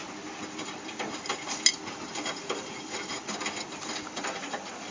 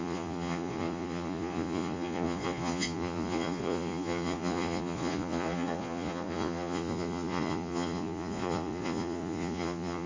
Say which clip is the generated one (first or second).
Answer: second